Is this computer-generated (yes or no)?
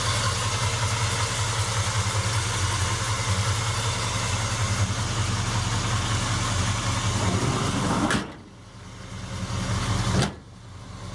no